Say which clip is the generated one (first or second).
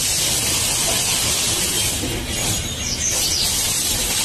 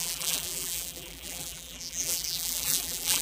second